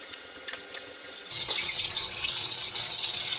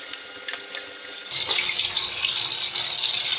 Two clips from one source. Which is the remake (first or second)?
first